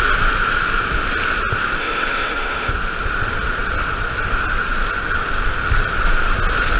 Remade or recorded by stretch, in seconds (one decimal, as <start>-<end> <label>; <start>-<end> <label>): 0.0-1.8 recorded; 1.8-2.7 remade; 2.7-6.8 recorded